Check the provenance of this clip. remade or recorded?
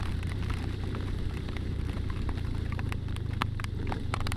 remade